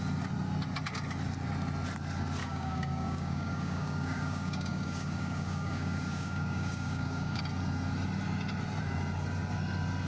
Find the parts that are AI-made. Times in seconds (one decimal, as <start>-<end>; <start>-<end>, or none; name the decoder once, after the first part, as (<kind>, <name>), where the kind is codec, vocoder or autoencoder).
2.4-7.4 (codec, DAC)